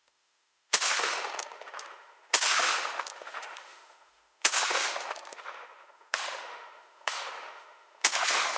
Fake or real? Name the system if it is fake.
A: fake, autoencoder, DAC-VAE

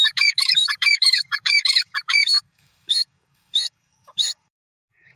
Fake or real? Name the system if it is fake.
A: fake, codec, DAC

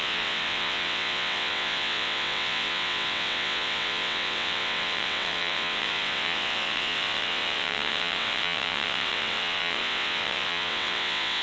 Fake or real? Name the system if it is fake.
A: fake, vocoder, WaveNeXt